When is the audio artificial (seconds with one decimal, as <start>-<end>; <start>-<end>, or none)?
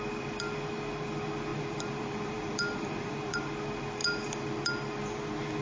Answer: 1.5-3.4